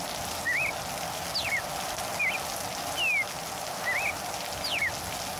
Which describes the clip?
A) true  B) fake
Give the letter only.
A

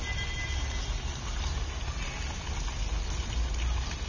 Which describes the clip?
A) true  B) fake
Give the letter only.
A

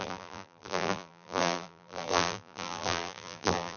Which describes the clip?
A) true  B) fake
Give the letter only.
B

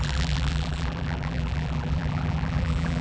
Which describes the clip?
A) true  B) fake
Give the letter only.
B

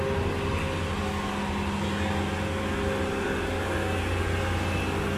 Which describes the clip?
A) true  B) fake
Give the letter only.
A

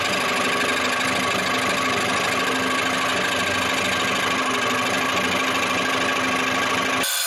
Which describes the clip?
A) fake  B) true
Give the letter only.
B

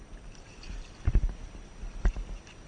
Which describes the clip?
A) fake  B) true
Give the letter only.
B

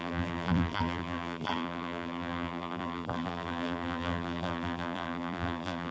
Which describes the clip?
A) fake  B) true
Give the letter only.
A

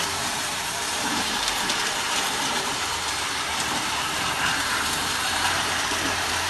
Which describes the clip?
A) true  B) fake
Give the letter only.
B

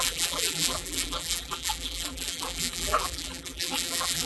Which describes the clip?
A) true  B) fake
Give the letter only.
B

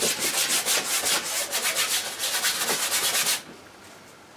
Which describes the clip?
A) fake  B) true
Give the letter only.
B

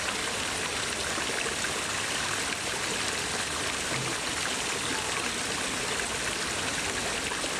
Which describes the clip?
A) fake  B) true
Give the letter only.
B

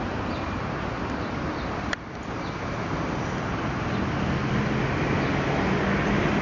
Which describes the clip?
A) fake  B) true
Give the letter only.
B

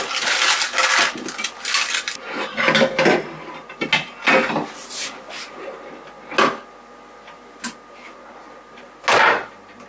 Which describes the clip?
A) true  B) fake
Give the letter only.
A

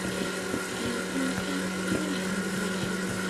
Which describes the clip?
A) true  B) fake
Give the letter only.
A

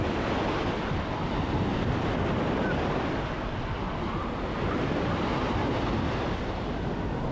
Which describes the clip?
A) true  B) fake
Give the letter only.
A